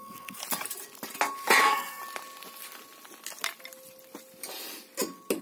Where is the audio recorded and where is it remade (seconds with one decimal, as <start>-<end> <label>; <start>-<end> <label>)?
0.0-0.4 remade; 0.4-1.6 recorded; 1.6-2.0 remade; 2.0-5.4 recorded